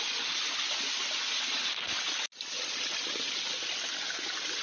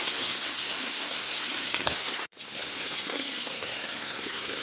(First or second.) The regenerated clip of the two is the second